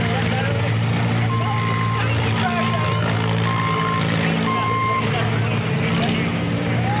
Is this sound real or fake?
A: real